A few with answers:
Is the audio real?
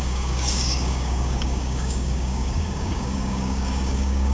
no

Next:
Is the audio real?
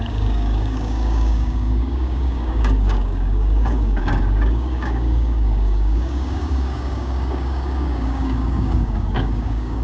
no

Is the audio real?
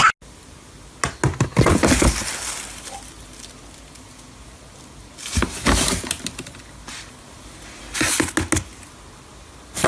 yes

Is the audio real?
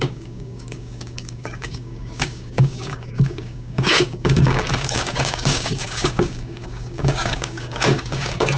no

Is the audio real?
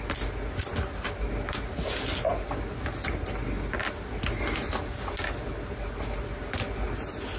yes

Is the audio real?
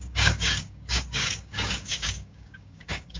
no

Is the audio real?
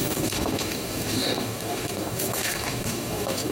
no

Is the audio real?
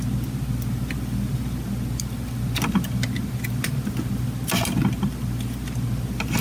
yes